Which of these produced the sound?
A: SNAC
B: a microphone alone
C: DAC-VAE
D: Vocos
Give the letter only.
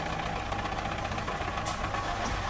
B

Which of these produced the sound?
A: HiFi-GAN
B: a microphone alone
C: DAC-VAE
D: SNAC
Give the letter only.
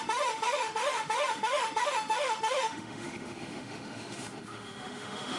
C